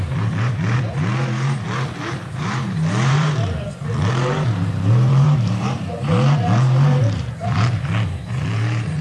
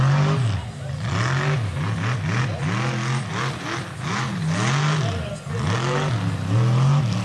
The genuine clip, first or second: second